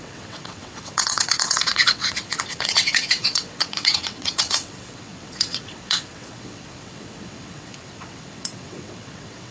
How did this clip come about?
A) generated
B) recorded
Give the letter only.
A